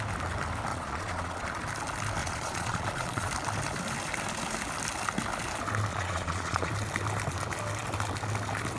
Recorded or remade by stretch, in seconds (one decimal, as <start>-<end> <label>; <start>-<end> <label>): 0.0-0.7 recorded; 0.7-1.6 remade; 1.6-2.2 recorded; 2.2-3.3 remade; 3.3-5.9 recorded; 5.9-6.7 remade; 6.7-8.8 recorded